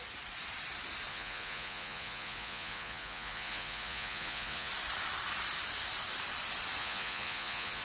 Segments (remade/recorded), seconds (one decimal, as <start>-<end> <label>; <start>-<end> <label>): 0.0-1.1 recorded; 1.1-4.7 remade; 4.7-6.8 recorded; 6.8-7.8 remade

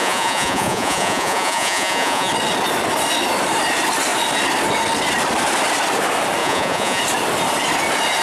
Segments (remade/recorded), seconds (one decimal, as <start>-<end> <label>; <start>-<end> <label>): 0.0-2.3 remade; 2.3-6.4 recorded; 6.4-7.0 remade; 7.0-8.2 recorded